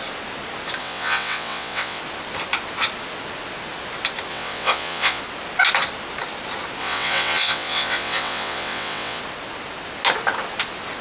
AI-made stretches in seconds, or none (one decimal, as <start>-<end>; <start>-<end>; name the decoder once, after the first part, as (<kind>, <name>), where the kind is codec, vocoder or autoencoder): 0.8-2.0 (vocoder, WaveNeXt); 4.3-5.2; 6.8-9.2